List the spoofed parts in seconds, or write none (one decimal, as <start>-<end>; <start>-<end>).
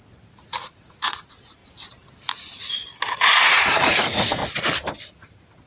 0.0-1.6; 3.4-4.4; 5.1-5.7